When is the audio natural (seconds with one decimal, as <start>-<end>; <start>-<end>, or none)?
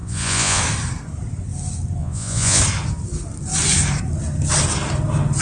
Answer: 0.6-2.0; 2.6-5.4